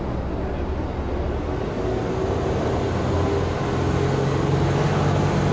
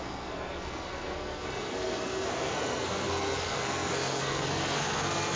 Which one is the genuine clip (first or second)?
first